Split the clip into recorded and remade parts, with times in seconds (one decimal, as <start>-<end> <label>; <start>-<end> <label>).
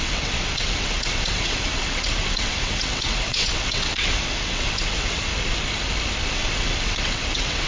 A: 0.0-5.3 remade; 5.3-6.3 recorded; 6.3-7.7 remade